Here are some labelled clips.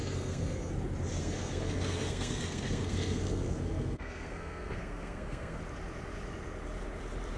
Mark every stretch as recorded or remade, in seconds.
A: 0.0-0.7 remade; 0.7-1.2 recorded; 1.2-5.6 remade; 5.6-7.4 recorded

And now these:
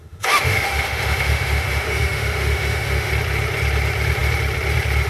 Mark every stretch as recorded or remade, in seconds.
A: 0.0-3.1 remade; 3.1-5.1 recorded